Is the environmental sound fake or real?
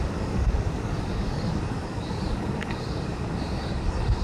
fake